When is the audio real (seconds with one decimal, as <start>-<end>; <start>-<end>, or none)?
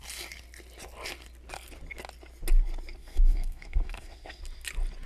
0.0-3.0; 4.4-5.1